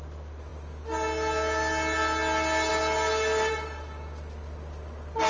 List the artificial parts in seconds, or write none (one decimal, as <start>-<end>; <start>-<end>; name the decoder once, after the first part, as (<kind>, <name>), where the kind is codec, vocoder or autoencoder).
none